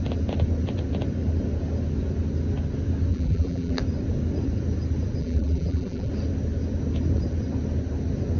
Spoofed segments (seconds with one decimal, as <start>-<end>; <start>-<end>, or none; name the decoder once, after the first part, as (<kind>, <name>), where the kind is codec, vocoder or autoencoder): 3.1-3.8 (vocoder, BigVGAN v2); 5.2-6.1